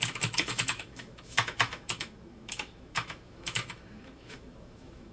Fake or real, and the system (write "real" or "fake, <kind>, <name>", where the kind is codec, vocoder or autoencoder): fake, autoencoder, DAC-VAE